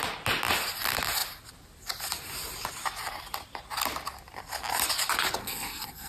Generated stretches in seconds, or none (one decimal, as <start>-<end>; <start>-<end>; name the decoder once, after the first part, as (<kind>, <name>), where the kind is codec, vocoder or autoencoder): 5.4-6.1 (codec, SNAC)